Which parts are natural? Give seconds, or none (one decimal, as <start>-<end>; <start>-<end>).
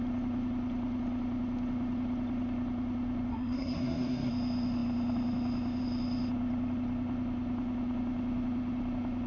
0.0-3.3; 4.3-9.3